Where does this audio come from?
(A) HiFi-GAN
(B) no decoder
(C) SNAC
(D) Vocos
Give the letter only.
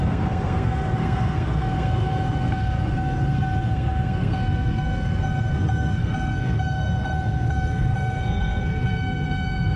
C